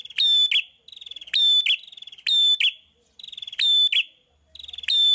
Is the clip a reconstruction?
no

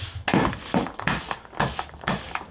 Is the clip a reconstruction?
no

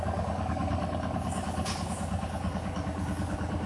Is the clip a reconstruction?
yes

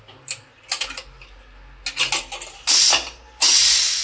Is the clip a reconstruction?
no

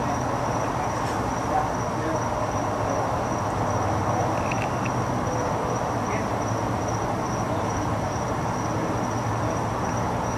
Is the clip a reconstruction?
no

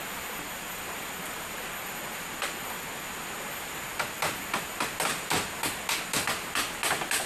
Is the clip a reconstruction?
no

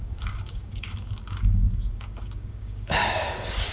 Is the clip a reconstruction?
yes